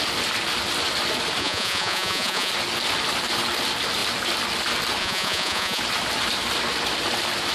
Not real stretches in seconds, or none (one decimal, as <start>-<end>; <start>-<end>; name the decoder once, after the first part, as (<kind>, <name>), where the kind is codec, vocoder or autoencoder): 1.4-2.5 (vocoder, Vocos); 5.0-5.8